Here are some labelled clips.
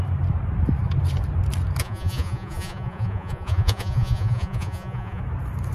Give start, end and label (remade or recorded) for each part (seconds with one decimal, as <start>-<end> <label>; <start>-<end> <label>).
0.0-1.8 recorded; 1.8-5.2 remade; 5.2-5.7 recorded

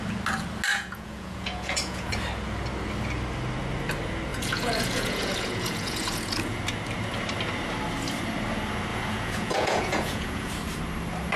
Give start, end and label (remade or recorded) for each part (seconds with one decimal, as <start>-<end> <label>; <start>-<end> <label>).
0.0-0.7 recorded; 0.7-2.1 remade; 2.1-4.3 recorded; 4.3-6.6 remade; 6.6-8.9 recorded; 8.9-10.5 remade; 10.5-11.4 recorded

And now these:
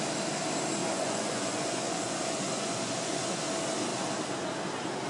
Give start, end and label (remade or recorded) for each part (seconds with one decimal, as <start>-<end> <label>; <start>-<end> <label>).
0.0-0.8 recorded; 0.8-3.4 remade; 3.4-5.1 recorded

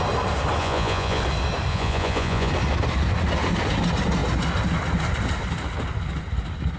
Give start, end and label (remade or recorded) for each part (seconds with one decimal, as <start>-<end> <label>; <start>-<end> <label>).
0.0-0.6 recorded; 0.6-1.2 remade; 1.2-1.7 recorded; 1.7-2.5 remade; 2.5-6.8 recorded

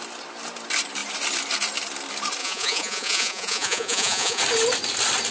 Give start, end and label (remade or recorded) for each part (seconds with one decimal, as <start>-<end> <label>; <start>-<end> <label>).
0.0-2.4 recorded; 2.4-4.4 remade; 4.4-5.3 recorded

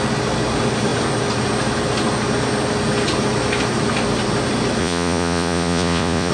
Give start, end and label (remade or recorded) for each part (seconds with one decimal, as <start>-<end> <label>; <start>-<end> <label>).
0.0-4.8 recorded; 4.8-6.3 remade